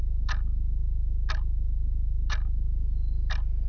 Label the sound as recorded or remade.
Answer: recorded